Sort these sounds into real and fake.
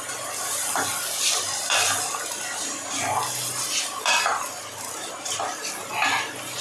real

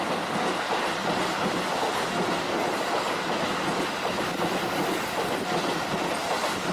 real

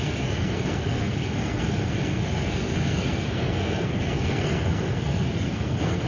fake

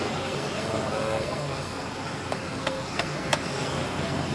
fake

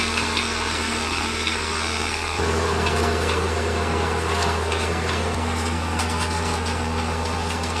fake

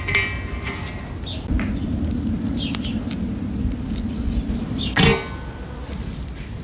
real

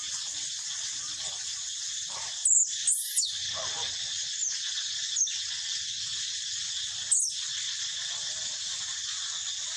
real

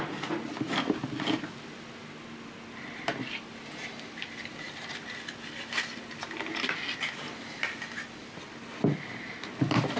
real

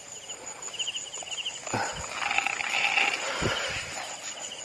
real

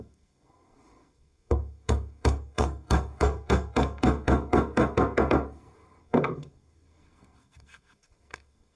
fake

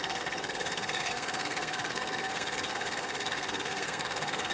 fake